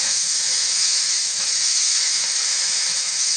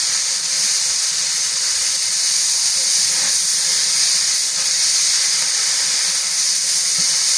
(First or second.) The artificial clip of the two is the first